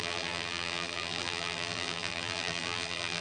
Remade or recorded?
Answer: remade